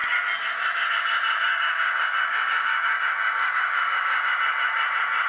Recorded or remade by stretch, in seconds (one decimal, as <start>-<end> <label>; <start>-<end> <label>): 0.0-1.5 recorded; 1.5-4.3 remade; 4.3-5.3 recorded